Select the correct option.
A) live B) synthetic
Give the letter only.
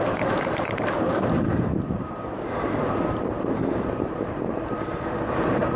B